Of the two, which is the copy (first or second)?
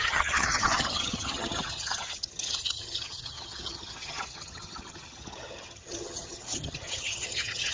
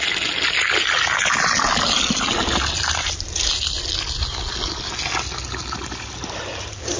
first